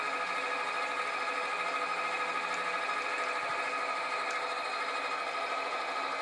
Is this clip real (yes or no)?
yes